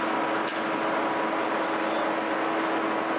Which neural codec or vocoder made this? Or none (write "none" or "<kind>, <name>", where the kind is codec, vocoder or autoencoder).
none